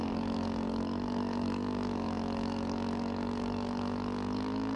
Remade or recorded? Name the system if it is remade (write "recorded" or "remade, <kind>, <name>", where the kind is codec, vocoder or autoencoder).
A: remade, codec, DAC